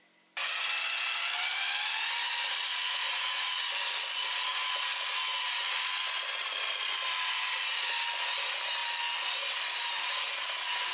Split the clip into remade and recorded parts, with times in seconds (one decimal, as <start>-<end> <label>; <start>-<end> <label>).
0.0-10.9 recorded